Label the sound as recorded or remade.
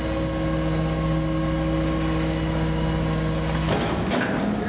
recorded